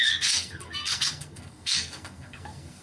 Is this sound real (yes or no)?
no